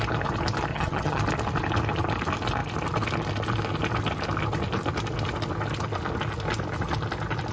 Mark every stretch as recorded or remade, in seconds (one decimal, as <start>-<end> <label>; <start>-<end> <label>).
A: 0.0-0.7 recorded; 0.7-1.2 remade; 1.2-7.5 recorded